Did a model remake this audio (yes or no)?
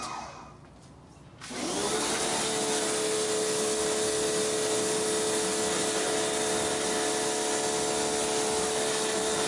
no